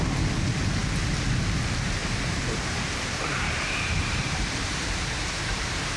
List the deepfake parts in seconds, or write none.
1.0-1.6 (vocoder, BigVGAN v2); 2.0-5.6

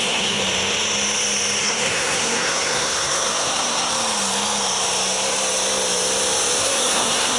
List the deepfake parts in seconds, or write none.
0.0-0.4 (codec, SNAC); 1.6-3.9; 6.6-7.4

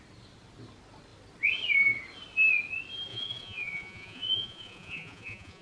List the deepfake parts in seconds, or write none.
3.1-5.6 (vocoder, Vocos)